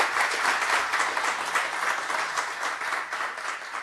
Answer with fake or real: real